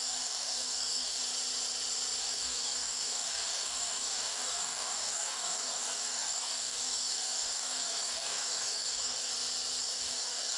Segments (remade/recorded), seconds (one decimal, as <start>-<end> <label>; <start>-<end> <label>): 0.0-1.2 remade; 1.2-2.2 recorded; 2.2-9.3 remade; 9.3-9.8 recorded; 9.8-10.6 remade